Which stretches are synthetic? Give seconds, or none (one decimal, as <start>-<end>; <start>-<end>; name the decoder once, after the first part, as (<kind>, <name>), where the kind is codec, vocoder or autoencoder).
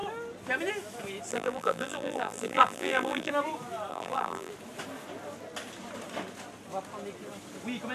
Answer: 1.3-3.3 (vocoder, BigVGAN v2); 3.9-4.5